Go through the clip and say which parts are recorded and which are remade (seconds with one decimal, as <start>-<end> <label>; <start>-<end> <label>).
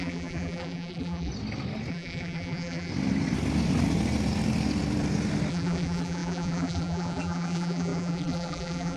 0.0-1.3 remade; 1.3-1.9 recorded; 1.9-2.9 remade; 2.9-5.5 recorded; 5.5-9.0 remade